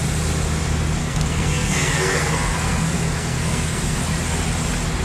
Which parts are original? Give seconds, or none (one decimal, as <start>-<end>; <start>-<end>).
0.0-1.0; 4.0-5.0